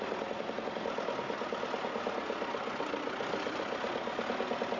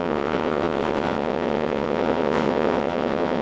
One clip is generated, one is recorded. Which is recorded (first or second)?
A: first